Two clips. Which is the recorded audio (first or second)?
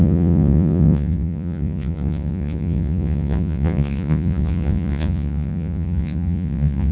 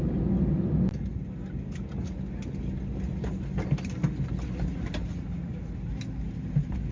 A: second